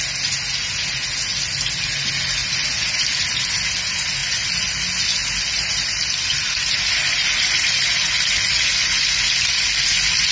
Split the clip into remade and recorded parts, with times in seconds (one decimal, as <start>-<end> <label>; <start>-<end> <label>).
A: 0.0-10.3 recorded